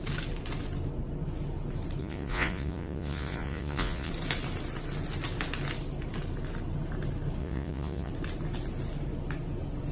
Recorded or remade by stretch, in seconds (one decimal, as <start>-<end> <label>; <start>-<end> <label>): 0.0-2.0 recorded; 2.0-4.1 remade; 4.1-7.4 recorded; 7.4-8.1 remade; 8.1-9.9 recorded